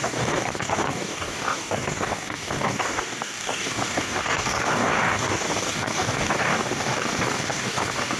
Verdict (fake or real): fake